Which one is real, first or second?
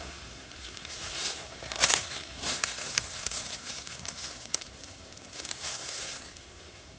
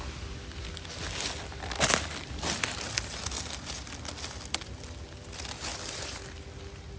second